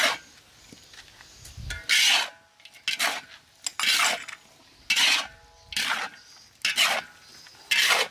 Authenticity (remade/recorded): recorded